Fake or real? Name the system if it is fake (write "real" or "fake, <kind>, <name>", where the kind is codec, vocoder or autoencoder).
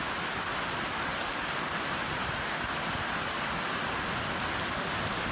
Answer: real